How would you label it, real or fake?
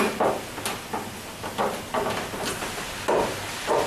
real